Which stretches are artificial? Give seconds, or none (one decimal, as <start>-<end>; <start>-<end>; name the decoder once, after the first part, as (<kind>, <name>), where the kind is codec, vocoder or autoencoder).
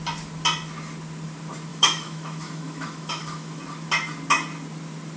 1.7-3.6 (autoencoder, DAC-VAE)